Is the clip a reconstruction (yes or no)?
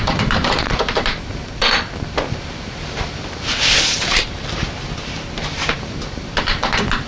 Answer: yes